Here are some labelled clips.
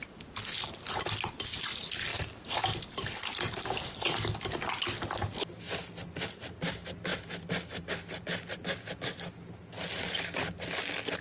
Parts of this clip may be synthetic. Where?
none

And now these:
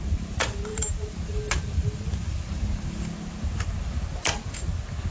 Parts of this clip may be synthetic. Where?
none

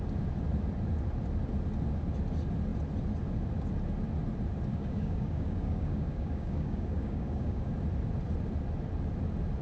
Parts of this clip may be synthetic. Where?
4.7-7.7 (codec, DAC)

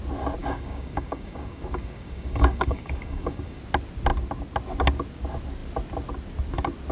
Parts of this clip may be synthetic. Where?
0.4-3.6 (codec, DAC)

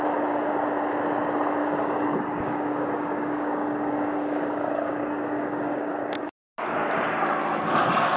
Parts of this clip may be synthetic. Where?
1.6-6.3 (codec, DAC)

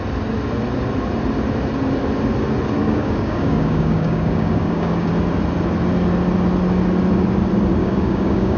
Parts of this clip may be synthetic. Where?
2.8-5.1 (codec, DAC); 7.8-8.6

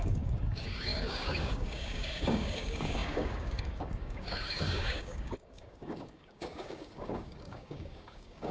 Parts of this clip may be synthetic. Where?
0.0-8.5 (codec, DAC)